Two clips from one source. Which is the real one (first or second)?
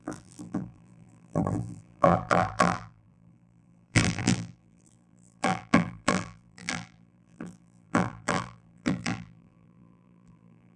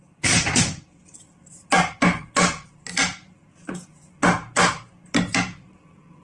second